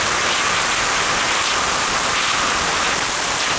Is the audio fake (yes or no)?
no